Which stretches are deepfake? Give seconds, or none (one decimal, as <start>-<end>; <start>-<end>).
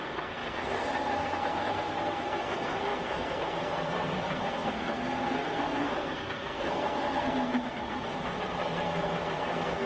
0.0-9.9